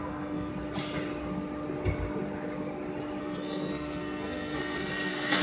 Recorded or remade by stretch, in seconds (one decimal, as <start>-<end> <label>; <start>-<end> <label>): 0.0-0.5 remade; 0.5-3.2 recorded; 3.2-5.4 remade